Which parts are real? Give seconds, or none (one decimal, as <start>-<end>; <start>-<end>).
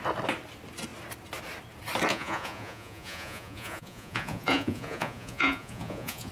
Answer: 0.0-2.1